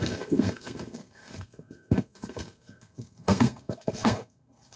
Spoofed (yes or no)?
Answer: yes